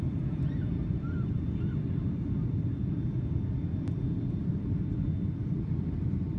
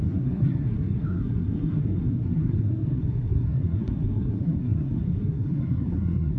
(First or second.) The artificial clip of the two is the second